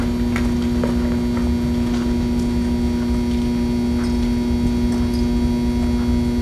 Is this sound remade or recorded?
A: recorded